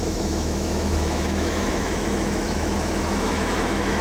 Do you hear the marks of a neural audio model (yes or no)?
yes